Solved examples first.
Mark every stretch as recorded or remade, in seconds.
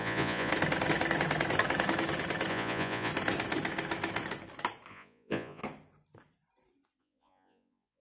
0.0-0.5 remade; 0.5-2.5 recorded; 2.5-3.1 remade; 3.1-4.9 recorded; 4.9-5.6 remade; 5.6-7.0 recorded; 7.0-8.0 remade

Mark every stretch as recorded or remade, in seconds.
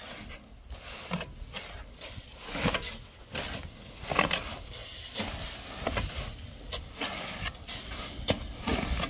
0.0-9.1 recorded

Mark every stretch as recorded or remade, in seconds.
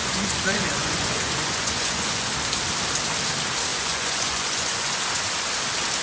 0.0-2.3 remade; 2.3-3.7 recorded; 3.7-5.0 remade; 5.0-6.0 recorded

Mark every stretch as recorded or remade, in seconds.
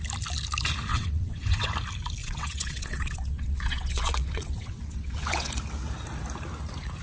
0.0-0.9 recorded; 0.9-1.7 remade; 1.7-2.2 recorded; 2.2-5.5 remade; 5.5-7.0 recorded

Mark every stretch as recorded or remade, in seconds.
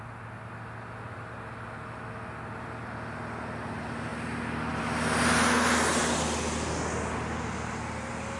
0.0-8.4 recorded